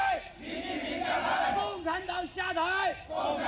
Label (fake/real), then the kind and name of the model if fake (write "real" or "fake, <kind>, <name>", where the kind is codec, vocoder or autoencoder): real